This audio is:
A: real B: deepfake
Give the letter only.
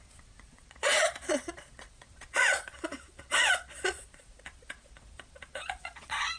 B